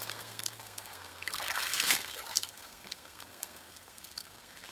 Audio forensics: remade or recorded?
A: remade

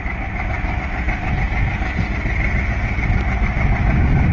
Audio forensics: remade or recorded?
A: recorded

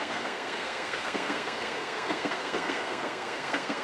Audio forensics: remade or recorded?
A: remade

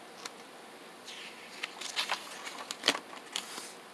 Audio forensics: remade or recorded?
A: recorded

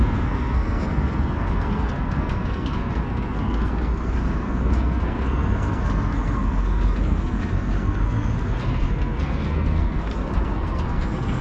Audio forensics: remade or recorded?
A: remade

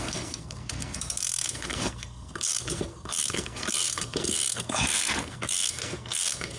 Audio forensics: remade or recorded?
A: remade